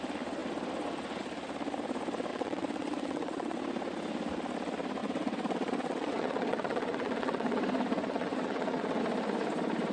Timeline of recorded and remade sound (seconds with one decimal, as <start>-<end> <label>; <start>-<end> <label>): 0.0-2.3 recorded; 2.3-3.6 remade; 3.6-5.0 recorded; 5.0-9.0 remade; 9.0-9.9 recorded